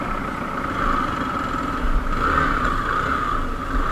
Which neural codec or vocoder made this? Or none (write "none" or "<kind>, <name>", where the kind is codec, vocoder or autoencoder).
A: none